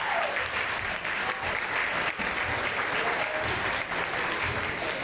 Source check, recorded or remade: recorded